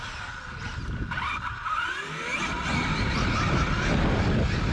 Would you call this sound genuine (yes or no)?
yes